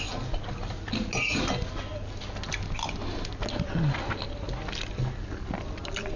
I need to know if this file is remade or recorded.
recorded